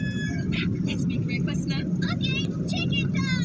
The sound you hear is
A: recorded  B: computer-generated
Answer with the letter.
A